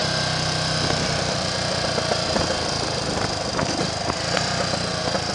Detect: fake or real real